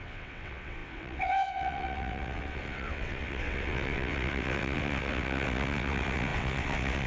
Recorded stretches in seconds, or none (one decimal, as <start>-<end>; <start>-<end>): none